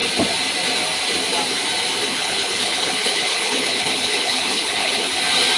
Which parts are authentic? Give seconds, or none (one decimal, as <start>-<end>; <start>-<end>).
0.0-2.1; 5.1-5.6